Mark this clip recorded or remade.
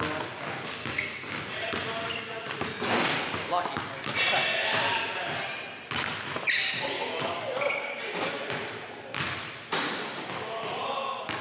recorded